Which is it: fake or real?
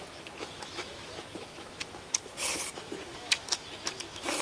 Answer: fake